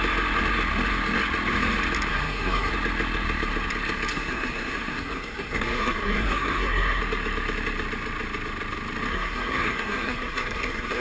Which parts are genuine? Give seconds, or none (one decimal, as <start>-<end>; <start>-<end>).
0.0-2.1; 2.7-4.1; 7.0-9.1